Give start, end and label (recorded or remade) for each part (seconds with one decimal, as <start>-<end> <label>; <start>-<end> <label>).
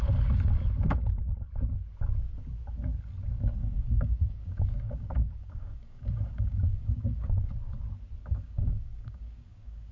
0.0-3.6 recorded; 3.6-7.5 remade; 7.5-8.2 recorded; 8.2-9.9 remade